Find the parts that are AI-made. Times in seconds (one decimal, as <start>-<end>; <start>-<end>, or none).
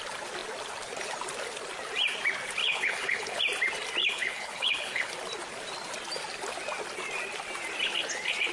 2.6-3.4; 4.0-5.1